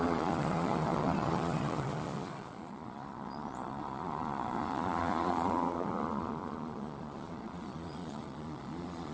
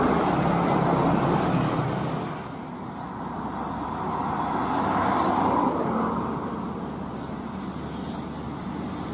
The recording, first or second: second